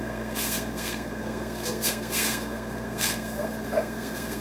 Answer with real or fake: fake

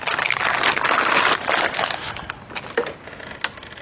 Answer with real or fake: real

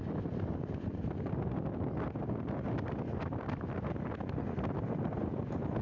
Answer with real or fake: real